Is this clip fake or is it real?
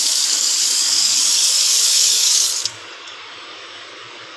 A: fake